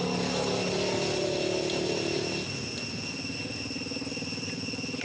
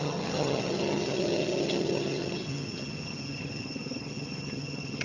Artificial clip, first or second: second